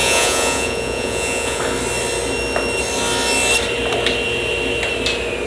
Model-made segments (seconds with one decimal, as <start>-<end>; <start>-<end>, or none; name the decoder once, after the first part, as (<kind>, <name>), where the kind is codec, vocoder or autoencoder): 0.0-1.6 (vocoder, Vocos)